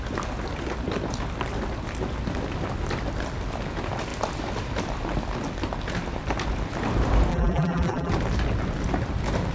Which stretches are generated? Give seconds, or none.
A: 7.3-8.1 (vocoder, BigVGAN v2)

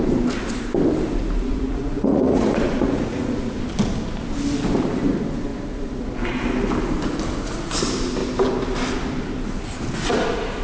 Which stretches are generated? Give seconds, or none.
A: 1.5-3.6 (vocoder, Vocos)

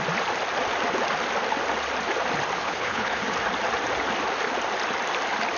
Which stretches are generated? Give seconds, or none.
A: 2.6-3.2 (codec, HILCodec)

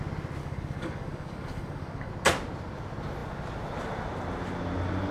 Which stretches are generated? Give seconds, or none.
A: 0.4-2.1 (codec, DAC)

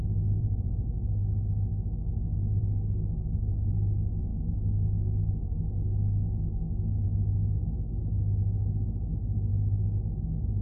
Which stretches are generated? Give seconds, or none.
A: 0.4-1.2 (vocoder, BigVGAN v2)

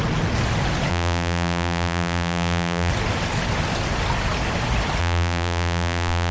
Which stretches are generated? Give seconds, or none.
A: 0.9-2.9 (vocoder, BigVGAN v2); 5.0-6.3